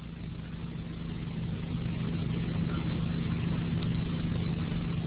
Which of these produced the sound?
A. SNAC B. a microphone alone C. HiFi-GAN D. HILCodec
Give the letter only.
B